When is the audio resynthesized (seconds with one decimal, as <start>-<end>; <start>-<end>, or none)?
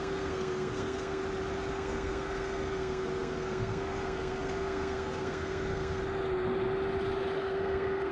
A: 0.0-1.2; 1.7-6.0; 7.4-8.1